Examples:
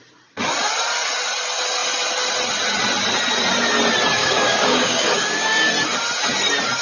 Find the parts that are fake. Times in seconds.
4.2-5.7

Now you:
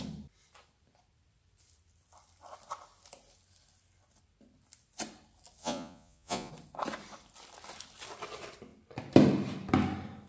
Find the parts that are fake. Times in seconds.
5.6-6.5